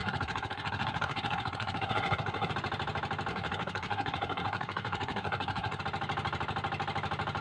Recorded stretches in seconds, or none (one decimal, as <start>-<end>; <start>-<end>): 2.5-3.3; 5.8-7.4